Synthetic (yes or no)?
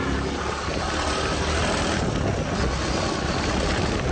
no